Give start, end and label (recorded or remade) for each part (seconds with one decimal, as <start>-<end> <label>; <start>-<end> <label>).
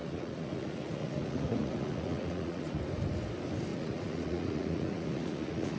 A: 0.0-2.8 remade; 2.8-3.7 recorded; 3.7-5.8 remade